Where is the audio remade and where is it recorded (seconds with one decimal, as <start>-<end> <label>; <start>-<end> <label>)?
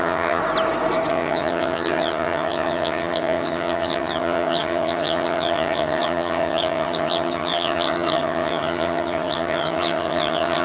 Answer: 0.0-0.4 remade; 0.4-1.1 recorded; 1.1-10.6 remade